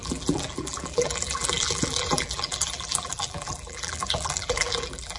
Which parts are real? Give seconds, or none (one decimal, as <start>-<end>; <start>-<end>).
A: none